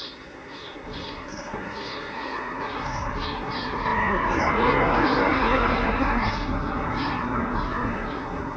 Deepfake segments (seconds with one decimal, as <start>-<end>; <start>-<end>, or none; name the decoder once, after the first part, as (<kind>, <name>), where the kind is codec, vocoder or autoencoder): 0.0-8.6 (codec, SNAC)